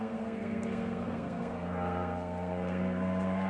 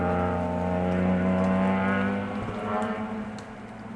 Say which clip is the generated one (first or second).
first